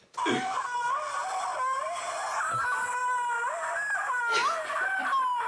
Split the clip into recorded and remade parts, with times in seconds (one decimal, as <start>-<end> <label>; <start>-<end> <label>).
0.0-5.5 recorded